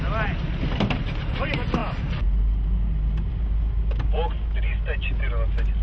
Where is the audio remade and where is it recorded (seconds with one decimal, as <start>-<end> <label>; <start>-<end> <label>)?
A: 0.0-5.8 recorded